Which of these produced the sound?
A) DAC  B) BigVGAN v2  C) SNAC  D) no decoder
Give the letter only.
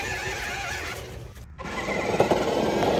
D